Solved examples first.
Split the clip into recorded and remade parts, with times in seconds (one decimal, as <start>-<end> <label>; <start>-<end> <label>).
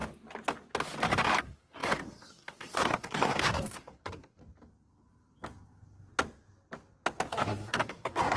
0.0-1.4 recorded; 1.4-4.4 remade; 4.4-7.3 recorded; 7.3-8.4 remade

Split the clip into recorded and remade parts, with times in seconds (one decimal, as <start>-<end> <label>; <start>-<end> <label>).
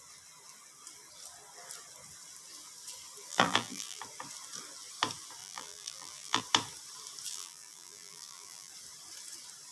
0.0-3.3 recorded; 3.3-4.0 remade; 4.0-5.4 recorded; 5.4-6.4 remade; 6.4-7.3 recorded; 7.3-8.7 remade; 8.7-9.7 recorded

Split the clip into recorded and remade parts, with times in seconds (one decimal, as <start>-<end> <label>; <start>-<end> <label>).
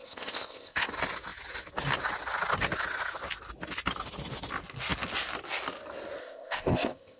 0.0-0.9 remade; 0.9-6.2 recorded; 6.2-7.2 remade